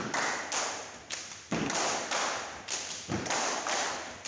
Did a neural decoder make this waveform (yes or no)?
no